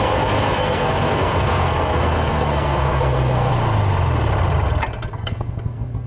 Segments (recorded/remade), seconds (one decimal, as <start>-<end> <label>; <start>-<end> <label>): 0.0-3.5 remade; 3.5-5.1 recorded; 5.1-6.1 remade